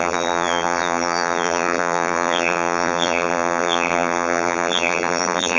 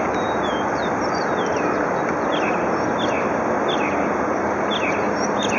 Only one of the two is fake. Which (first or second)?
first